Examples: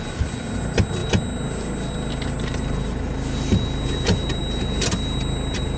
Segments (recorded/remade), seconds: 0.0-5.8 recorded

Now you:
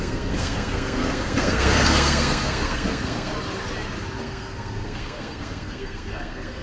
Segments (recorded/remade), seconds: 0.0-3.3 remade; 3.3-4.2 recorded; 4.2-6.6 remade

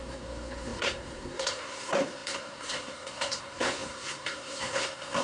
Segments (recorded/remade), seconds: 0.0-5.2 remade

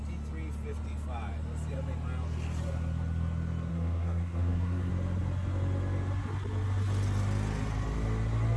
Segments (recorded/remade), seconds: 0.0-3.7 recorded; 3.7-4.9 remade; 4.9-8.6 recorded

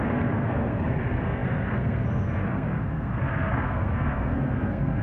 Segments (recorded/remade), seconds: 0.0-5.0 remade

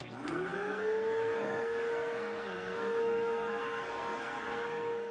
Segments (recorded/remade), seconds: 0.0-5.1 remade

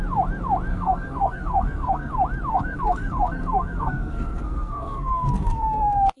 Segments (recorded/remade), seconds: 0.0-0.7 recorded; 0.7-2.1 remade; 2.1-2.5 recorded; 2.5-6.2 remade